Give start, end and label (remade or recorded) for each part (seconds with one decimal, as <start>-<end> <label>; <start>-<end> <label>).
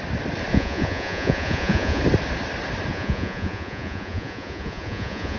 0.0-0.5 recorded; 0.5-2.0 remade; 2.0-2.9 recorded; 2.9-5.4 remade